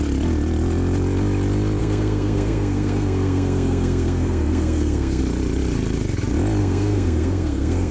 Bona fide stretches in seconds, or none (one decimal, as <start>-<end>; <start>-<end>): 0.0-1.8; 5.2-6.6